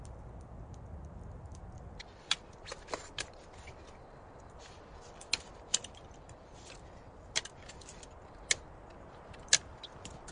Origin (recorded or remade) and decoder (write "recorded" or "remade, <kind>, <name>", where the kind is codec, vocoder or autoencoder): recorded